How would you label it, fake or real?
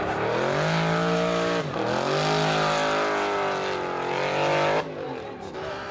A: real